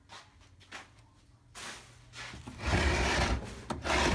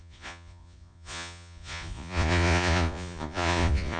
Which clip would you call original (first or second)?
first